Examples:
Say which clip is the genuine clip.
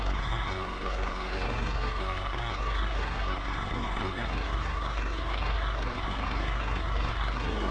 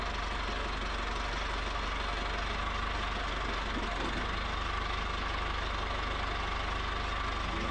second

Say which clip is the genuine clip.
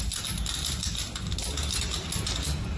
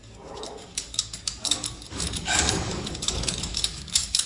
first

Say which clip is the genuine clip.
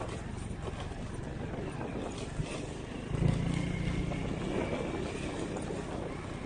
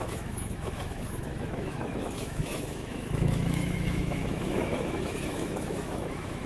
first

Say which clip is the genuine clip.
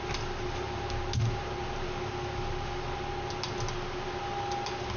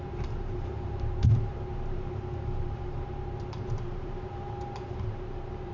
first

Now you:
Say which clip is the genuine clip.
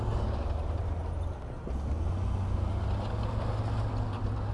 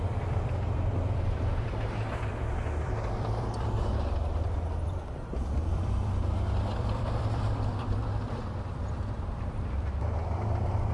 first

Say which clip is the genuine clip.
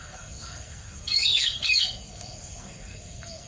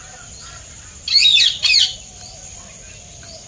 second